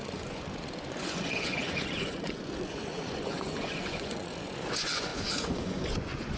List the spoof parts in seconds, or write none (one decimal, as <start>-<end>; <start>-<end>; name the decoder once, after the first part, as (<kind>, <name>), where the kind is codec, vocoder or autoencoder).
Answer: 0.0-6.4 (vocoder, Vocos)